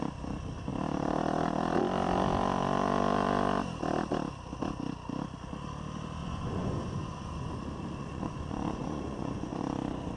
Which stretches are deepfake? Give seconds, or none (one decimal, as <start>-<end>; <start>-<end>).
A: 6.2-7.6; 8.0-9.6